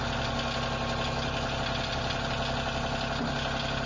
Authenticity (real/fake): real